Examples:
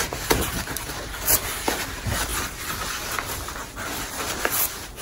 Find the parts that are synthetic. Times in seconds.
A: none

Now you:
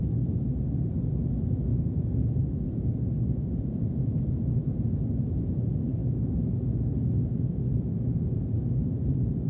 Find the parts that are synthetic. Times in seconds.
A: 1.7-4.3 (vocoder, Vocos); 6.9-8.1

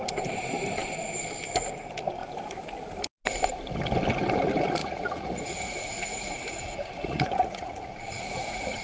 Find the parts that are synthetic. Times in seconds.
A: 4.8-8.8 (vocoder, Vocos)

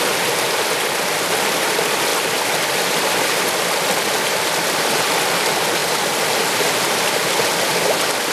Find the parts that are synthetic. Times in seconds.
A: none

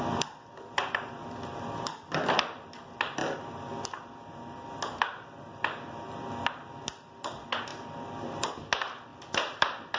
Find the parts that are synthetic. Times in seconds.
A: none

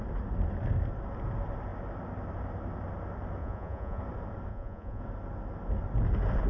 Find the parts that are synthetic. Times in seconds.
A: 3.4-4.0 (vocoder, Vocos); 4.5-5.0

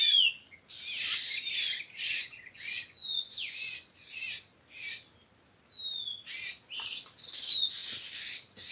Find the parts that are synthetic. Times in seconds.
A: 2.2-3.7 (vocoder, Vocos)